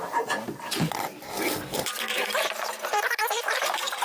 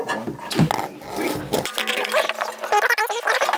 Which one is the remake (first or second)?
first